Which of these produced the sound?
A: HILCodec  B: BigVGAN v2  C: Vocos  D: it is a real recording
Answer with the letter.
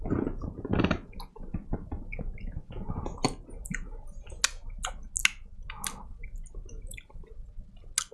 D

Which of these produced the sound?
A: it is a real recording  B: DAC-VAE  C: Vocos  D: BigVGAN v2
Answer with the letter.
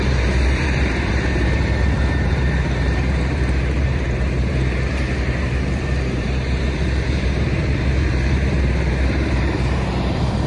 D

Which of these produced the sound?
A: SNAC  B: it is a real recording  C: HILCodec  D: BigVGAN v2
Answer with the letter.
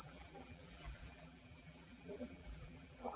D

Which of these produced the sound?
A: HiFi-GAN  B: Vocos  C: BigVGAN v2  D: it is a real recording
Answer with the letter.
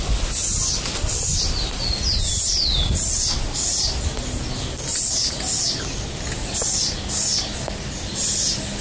D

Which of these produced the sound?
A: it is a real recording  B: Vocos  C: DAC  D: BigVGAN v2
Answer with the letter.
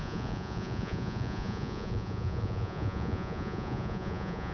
B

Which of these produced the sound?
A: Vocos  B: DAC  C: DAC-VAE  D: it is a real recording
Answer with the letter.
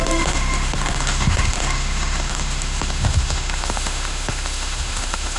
C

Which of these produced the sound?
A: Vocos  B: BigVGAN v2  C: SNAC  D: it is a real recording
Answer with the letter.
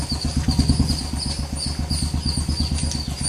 D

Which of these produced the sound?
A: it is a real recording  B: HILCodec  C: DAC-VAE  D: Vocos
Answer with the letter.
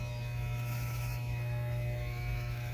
C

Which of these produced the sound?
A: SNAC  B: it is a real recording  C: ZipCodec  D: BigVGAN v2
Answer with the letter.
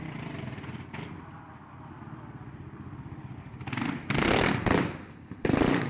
B